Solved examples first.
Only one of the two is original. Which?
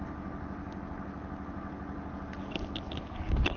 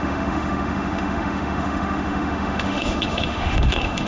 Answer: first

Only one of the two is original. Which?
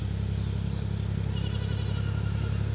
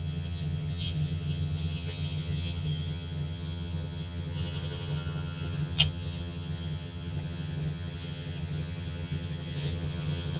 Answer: first